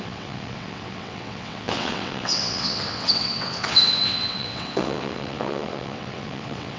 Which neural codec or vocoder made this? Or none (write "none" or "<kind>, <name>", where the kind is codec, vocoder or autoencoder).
vocoder, WaveNeXt